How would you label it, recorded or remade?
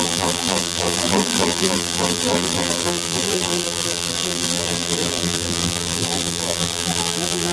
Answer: remade